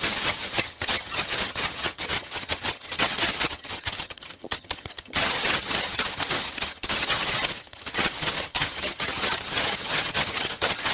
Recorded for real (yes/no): no